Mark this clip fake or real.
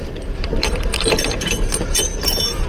fake